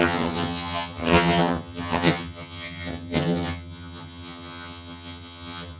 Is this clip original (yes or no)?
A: no